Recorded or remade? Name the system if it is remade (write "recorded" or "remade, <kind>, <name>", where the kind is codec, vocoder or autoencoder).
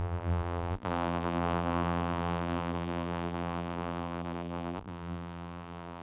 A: remade, vocoder, BigVGAN v2